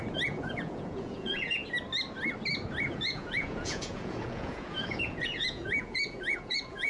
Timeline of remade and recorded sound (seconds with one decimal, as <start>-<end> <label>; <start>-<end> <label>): 0.0-1.6 remade; 1.6-2.9 recorded; 2.9-6.9 remade